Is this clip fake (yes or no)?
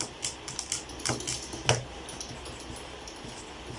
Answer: no